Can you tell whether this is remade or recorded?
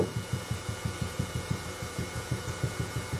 remade